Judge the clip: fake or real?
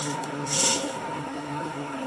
fake